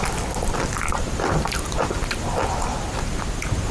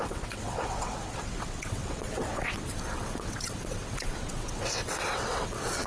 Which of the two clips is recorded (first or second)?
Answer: first